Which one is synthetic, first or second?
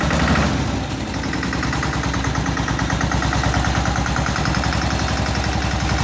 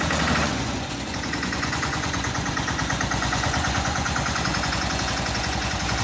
second